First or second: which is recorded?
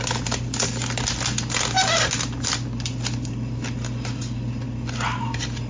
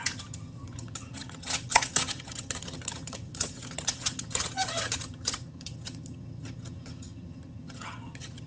first